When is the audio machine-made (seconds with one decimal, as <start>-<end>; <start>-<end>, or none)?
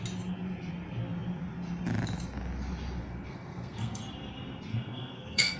3.0-4.0; 4.7-5.6